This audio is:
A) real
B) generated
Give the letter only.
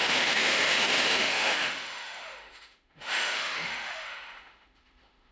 B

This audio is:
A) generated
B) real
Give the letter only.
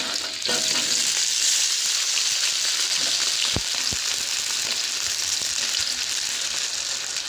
B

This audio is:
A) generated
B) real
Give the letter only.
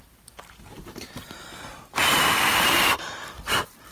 B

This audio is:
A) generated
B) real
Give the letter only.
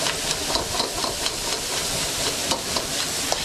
B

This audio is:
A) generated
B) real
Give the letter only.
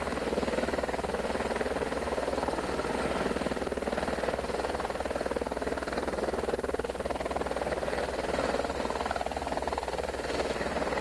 B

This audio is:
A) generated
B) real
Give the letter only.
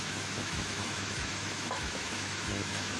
A